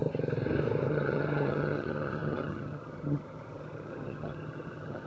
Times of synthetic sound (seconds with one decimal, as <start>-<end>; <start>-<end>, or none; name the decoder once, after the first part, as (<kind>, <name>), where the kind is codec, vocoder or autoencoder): 0.9-5.1 (vocoder, HiFi-GAN)

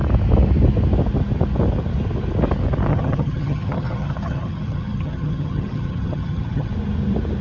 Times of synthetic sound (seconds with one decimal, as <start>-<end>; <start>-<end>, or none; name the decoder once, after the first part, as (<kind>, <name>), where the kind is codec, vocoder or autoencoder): 2.9-6.7 (vocoder, HiFi-GAN)

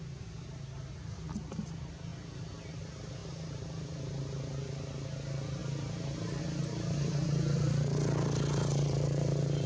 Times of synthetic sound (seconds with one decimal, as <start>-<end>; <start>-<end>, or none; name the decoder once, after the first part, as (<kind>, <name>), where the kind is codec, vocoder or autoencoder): none